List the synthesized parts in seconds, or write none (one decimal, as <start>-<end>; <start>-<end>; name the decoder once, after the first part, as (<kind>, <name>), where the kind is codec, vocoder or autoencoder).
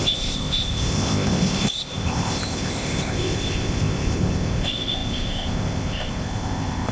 0.0-6.9 (codec, ZipCodec)